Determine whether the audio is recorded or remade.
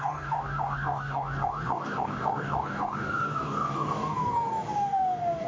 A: remade